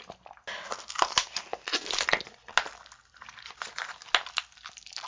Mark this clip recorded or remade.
recorded